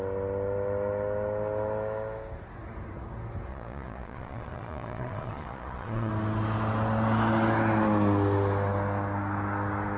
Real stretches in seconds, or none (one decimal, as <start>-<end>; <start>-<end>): 0.0-3.5; 6.1-10.0